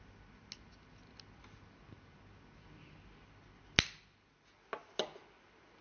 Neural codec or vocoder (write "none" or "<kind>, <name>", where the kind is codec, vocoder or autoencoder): none